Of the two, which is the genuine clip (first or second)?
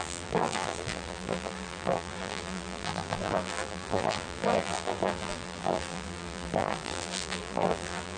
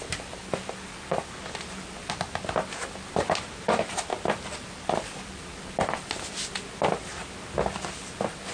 second